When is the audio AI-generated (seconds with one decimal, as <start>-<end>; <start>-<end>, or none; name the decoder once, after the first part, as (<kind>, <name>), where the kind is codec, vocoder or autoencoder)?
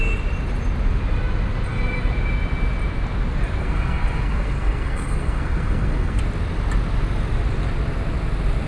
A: 3.6-6.2 (codec, SNAC)